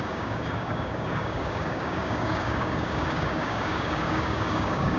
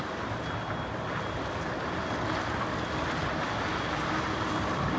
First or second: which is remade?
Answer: first